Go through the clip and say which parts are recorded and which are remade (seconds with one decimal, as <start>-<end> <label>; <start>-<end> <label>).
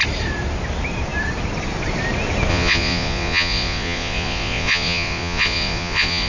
0.0-2.5 recorded; 2.5-6.3 remade